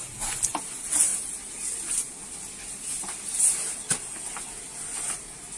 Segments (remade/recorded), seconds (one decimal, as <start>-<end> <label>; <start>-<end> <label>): 0.0-5.6 recorded